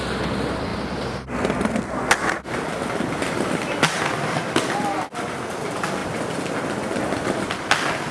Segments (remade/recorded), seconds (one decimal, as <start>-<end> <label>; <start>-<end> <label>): 0.0-8.1 recorded